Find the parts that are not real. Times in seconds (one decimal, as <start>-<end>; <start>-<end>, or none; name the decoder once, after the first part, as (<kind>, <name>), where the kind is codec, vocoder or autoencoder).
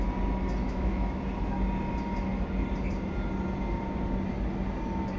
0.6-1.2 (autoencoder, DAC-VAE)